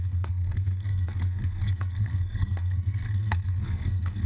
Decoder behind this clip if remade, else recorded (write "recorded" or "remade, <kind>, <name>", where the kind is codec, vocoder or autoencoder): remade, codec, SNAC